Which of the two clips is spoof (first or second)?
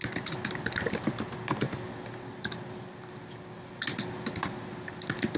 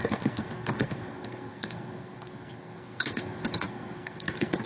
second